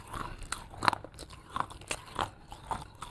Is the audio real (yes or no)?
yes